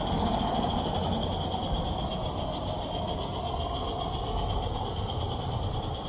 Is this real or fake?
real